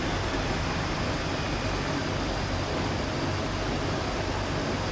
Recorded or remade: recorded